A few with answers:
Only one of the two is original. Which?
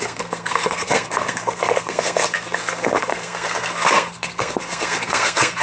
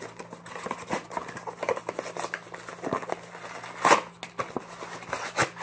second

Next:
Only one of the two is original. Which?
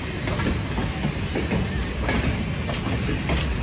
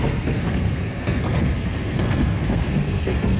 first